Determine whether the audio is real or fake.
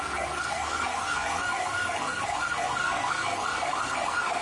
fake